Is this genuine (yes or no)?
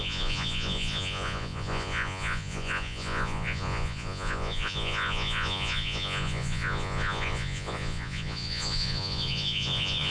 no